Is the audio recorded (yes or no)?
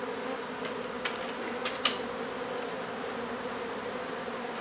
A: yes